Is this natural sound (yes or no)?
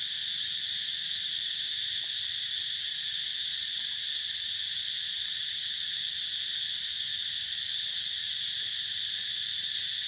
no